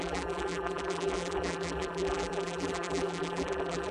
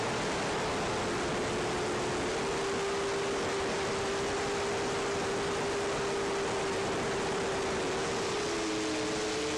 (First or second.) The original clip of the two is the second